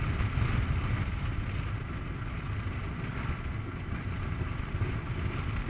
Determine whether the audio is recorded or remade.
recorded